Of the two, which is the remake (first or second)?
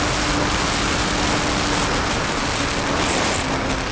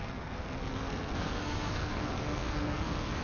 second